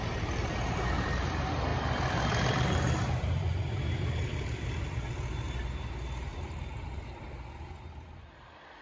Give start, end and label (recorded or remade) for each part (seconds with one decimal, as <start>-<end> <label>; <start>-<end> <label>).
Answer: 0.0-1.7 recorded; 1.7-5.0 remade; 5.0-6.3 recorded; 6.3-8.3 remade; 8.3-8.8 recorded